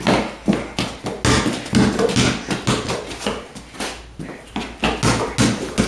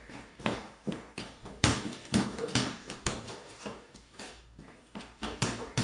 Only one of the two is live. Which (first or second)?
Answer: first